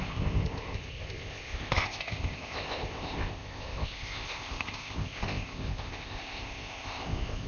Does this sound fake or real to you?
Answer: fake